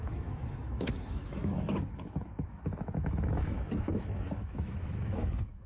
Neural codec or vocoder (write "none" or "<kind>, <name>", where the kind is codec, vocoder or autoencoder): autoencoder, DAC-VAE